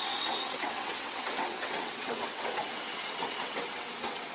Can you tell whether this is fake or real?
fake